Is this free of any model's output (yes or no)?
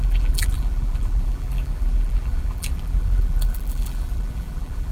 no